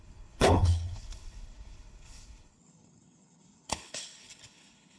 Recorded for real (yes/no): no